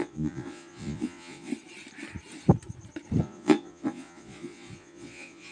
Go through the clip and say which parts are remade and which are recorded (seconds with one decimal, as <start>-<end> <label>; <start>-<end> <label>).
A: 0.0-1.5 remade; 1.5-3.2 recorded; 3.2-5.5 remade